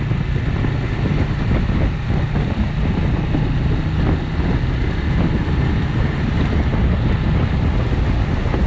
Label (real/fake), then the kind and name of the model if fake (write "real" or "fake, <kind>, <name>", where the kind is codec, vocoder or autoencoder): real